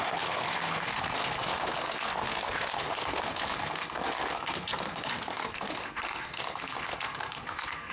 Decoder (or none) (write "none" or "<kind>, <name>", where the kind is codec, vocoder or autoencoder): codec, SNAC